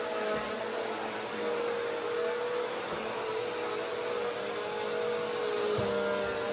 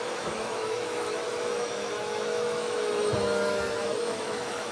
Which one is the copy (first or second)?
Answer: second